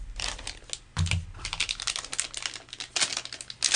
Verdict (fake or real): real